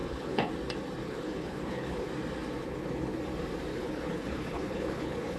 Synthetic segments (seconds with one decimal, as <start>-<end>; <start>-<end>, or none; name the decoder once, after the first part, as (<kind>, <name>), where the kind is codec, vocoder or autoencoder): 0.0-0.5 (codec, HILCodec); 1.0-2.1; 2.6-3.2; 3.7-5.4